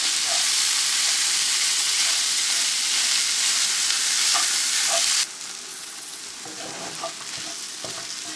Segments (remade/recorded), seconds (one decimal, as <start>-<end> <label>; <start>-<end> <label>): 0.0-1.6 recorded; 1.6-2.4 remade; 2.4-5.7 recorded; 5.7-6.2 remade; 6.2-8.4 recorded